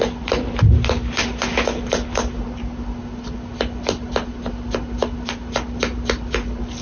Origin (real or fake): real